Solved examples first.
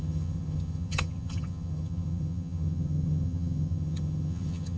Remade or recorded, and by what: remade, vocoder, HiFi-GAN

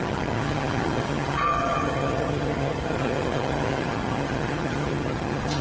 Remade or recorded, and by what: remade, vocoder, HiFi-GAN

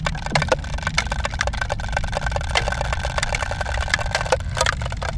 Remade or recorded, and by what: recorded